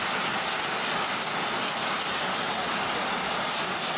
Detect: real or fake real